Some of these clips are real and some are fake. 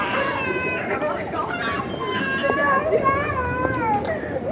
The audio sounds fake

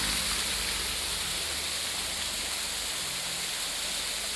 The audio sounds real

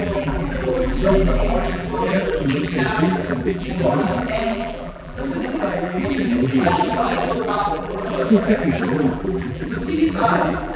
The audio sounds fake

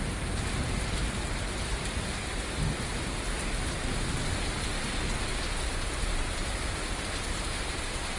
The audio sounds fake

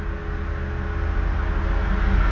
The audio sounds real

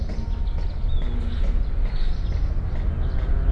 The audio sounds real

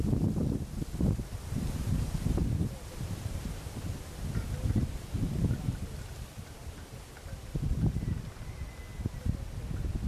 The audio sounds real